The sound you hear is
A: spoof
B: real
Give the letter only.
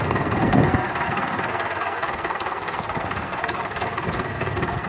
A